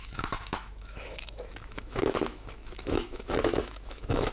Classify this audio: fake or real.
fake